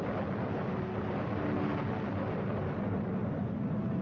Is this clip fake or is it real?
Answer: real